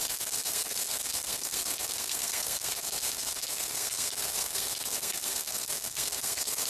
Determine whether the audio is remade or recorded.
remade